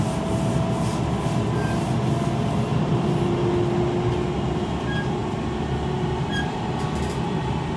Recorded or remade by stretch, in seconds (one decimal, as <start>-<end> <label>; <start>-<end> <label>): 0.0-2.7 recorded; 2.7-3.3 remade; 3.3-5.2 recorded; 5.2-6.8 remade; 6.8-7.8 recorded